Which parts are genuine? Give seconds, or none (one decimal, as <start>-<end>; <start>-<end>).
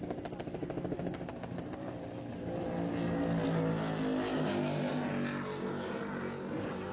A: 0.0-4.3; 4.9-6.9